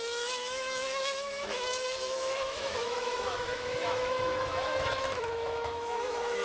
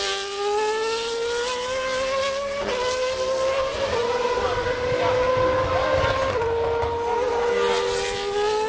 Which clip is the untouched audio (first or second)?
second